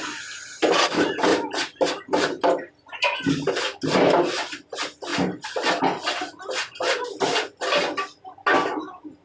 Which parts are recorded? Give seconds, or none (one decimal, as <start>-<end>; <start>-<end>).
0.0-1.3; 2.7-9.2

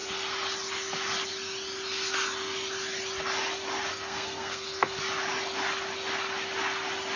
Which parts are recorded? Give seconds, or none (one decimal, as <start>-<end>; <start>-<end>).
0.0-3.9; 5.0-7.2